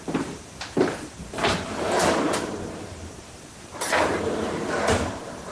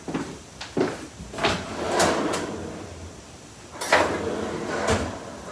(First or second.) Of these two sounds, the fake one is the first